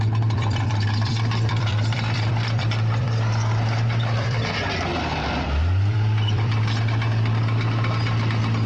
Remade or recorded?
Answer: remade